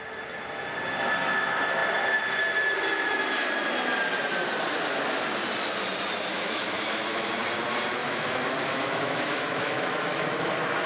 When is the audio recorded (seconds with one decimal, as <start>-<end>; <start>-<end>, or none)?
0.0-6.3; 7.3-8.0; 10.5-10.9